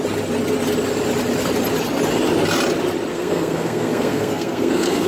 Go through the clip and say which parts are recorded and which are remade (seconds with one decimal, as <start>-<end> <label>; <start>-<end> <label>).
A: 0.0-3.1 recorded; 3.1-5.1 remade